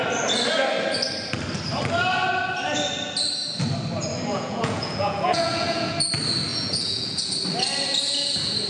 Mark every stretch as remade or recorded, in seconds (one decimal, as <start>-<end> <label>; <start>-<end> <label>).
0.0-4.3 recorded; 4.3-5.9 remade; 5.9-6.5 recorded; 6.5-7.3 remade; 7.3-8.7 recorded